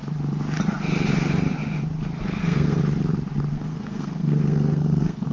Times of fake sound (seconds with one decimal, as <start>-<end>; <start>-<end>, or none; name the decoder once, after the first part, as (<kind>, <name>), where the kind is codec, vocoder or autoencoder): 2.4-2.8 (codec, SNAC); 3.5-5.3

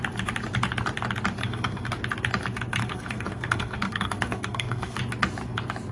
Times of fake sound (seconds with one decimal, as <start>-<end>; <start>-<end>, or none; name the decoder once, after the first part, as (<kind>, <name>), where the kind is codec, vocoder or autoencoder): 1.4-1.9 (codec, SNAC); 2.8-5.0

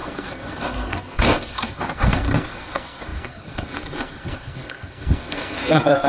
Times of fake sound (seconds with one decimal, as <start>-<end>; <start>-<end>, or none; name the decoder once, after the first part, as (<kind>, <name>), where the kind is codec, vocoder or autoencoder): 0.0-6.1 (codec, SNAC)

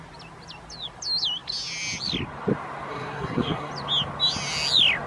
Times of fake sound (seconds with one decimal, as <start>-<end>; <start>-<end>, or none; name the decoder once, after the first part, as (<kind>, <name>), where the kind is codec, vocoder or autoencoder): 2.9-3.7 (codec, SNAC)

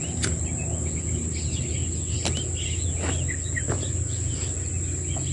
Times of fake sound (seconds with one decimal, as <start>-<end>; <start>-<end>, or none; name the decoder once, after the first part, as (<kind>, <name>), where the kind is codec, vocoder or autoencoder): none